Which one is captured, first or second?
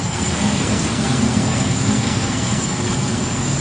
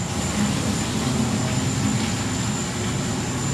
second